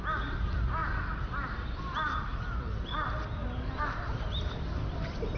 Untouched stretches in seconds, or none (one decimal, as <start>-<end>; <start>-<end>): 0.0-5.4